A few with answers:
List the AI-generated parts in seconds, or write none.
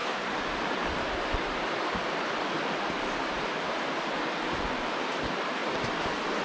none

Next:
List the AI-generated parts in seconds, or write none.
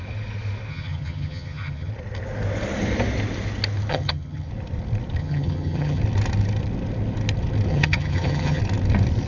0.7-1.9 (vocoder, HiFi-GAN); 3.9-4.5; 5.2-6.0; 7.7-8.6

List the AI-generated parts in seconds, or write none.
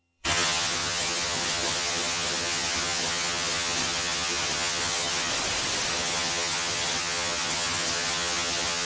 0.0-5.3 (vocoder, HiFi-GAN); 5.9-8.8